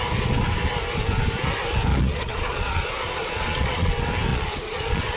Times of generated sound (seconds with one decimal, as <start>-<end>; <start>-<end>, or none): 1.9-3.9; 4.3-5.2